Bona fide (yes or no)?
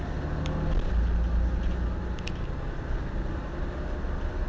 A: yes